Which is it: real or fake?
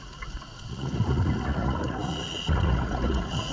fake